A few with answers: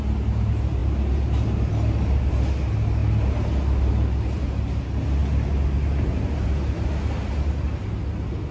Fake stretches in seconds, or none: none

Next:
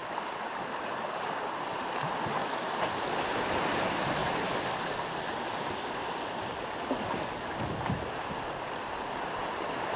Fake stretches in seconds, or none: none

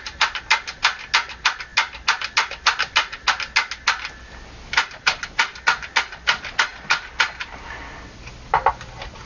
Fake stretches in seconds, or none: none

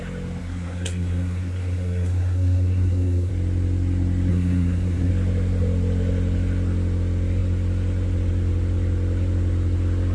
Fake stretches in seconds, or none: 0.4-3.3 (codec, SNAC); 4.3-5.1

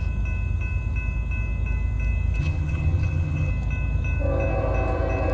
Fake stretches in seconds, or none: 2.4-3.5 (vocoder, HiFi-GAN)

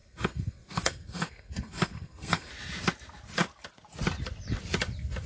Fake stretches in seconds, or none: 0.0-2.5 (codec, SNAC)